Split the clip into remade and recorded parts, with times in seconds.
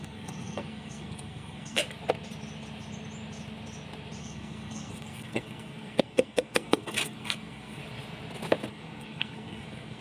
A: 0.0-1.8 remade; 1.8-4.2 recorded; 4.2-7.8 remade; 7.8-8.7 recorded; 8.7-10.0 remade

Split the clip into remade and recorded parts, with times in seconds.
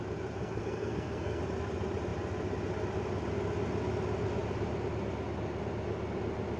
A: 0.0-0.4 recorded; 0.4-1.4 remade; 1.4-6.6 recorded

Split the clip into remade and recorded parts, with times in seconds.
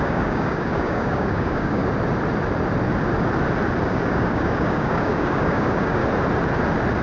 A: 0.0-1.8 remade; 1.8-3.9 recorded; 3.9-6.0 remade; 6.0-7.0 recorded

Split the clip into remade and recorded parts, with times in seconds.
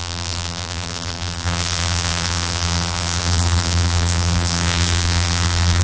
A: 0.0-5.8 remade